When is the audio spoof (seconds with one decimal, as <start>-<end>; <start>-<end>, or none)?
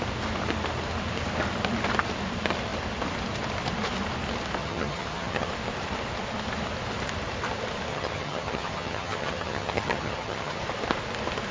4.6-5.5; 7.9-10.6